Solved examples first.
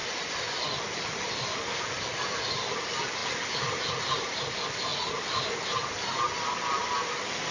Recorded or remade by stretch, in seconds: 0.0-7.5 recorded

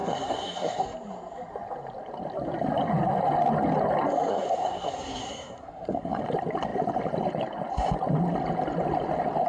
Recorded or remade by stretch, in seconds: 0.0-0.8 remade; 0.8-4.3 recorded; 4.3-6.2 remade; 6.2-9.5 recorded

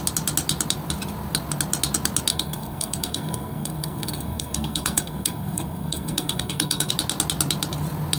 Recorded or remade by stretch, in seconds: 0.0-2.3 recorded; 2.3-6.9 remade; 6.9-8.2 recorded

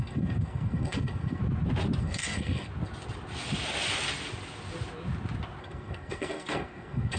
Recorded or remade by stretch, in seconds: 0.0-1.4 remade; 1.4-2.0 recorded; 2.0-2.7 remade; 2.7-5.6 recorded; 5.6-7.2 remade

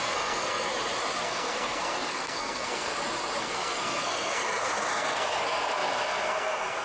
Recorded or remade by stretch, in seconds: 0.0-0.7 remade; 0.7-1.2 recorded; 1.2-2.9 remade; 2.9-3.4 recorded; 3.4-6.8 remade

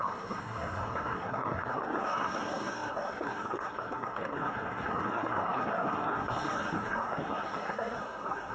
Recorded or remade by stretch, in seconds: 0.0-8.5 remade